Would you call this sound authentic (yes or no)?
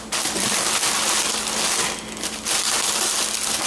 yes